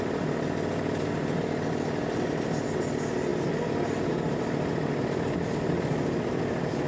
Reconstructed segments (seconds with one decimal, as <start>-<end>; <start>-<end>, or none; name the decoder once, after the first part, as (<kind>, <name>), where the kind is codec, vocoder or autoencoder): none